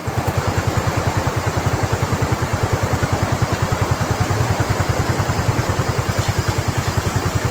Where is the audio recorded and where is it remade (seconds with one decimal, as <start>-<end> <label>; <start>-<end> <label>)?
0.0-7.5 recorded